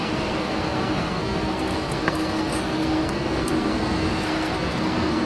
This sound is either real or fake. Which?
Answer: fake